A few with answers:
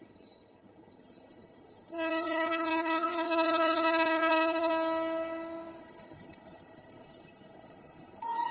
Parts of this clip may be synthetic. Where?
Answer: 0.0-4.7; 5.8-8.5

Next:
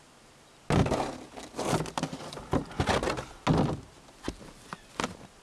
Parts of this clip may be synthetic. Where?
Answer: none

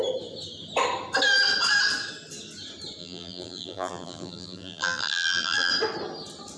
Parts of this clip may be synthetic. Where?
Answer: 3.0-5.7

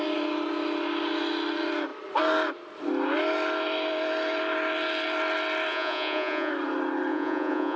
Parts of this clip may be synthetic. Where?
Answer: 5.7-6.5; 7.1-7.8